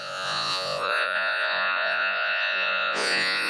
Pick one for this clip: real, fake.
fake